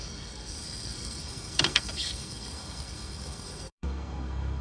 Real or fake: fake